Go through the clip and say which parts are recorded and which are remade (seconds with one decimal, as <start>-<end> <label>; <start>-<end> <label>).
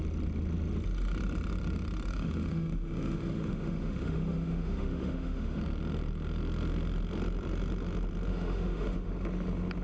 0.0-2.1 recorded; 2.1-5.6 remade; 5.6-8.3 recorded; 8.3-9.1 remade; 9.1-9.8 recorded